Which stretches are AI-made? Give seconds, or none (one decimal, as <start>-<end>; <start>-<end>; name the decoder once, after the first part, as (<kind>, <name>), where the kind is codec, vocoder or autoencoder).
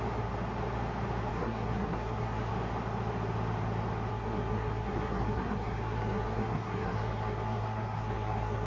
1.3-2.5 (codec, SNAC); 4.1-8.7